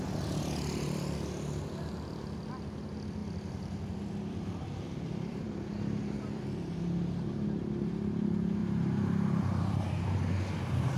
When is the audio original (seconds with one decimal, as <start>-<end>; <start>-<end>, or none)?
0.0-3.2; 6.8-8.6; 9.3-11.0